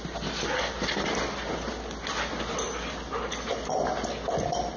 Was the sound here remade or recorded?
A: recorded